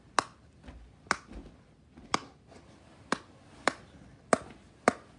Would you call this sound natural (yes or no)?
yes